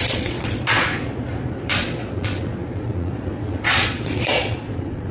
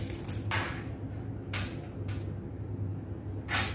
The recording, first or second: second